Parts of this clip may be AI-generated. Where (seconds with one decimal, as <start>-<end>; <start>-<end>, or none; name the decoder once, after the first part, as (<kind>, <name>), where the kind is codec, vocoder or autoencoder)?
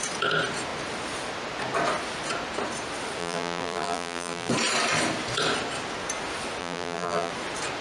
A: 3.2-4.5 (vocoder, BigVGAN v2); 6.6-7.3